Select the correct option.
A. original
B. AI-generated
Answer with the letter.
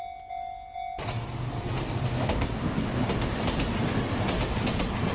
A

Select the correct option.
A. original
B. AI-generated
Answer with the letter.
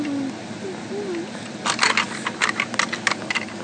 A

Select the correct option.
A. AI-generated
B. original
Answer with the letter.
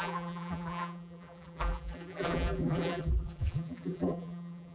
A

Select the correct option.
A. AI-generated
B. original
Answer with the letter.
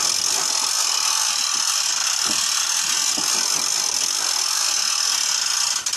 B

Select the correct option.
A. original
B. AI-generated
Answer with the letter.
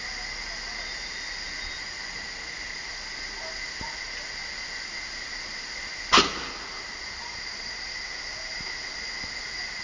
A